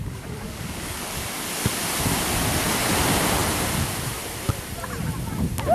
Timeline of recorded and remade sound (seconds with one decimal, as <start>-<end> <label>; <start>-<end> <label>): 0.0-1.3 remade; 1.3-5.7 recorded